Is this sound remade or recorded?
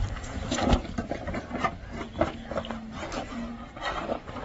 recorded